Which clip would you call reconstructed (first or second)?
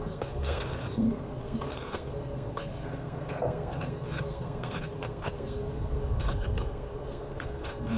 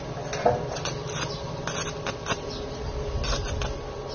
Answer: first